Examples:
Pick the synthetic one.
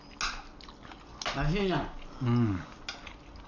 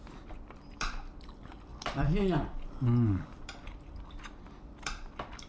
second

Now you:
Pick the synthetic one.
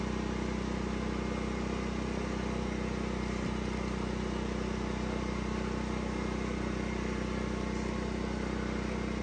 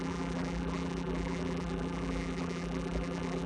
second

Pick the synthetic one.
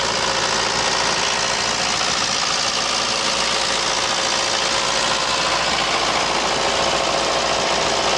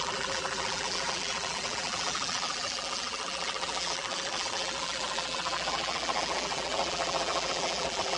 second